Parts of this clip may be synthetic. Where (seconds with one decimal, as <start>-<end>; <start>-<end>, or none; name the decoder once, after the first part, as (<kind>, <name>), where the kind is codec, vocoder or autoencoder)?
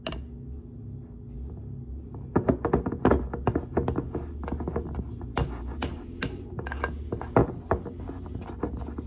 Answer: none